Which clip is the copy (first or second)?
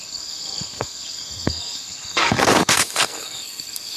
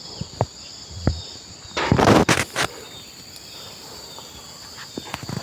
first